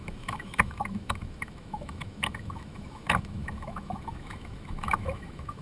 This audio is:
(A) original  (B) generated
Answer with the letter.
B